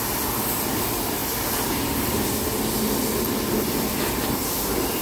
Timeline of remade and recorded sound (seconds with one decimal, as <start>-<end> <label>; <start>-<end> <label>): 0.0-5.0 recorded